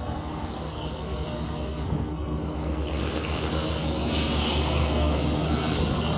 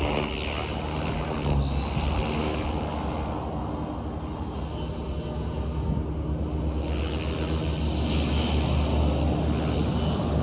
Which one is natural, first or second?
second